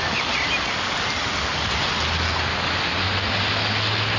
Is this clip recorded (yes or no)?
yes